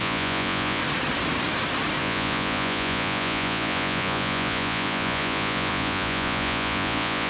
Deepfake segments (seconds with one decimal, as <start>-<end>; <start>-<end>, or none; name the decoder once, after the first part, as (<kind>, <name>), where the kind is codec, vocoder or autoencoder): 0.0-0.8 (vocoder, Vocos); 2.0-7.3